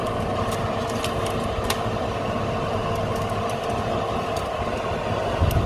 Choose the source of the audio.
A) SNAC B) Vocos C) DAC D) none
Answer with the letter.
D